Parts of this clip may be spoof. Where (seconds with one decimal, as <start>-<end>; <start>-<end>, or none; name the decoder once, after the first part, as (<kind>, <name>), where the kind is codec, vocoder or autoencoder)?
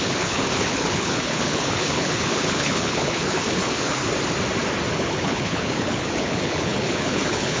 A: 0.0-4.0 (codec, HILCodec); 4.9-7.6